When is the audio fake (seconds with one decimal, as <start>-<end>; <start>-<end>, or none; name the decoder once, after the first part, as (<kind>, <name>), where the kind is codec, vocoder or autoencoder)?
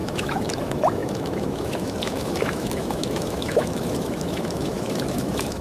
0.0-5.6 (autoencoder, DAC-VAE)